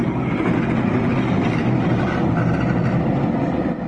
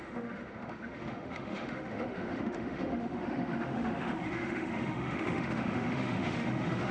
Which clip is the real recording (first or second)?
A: first